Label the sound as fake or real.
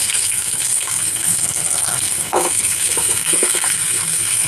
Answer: fake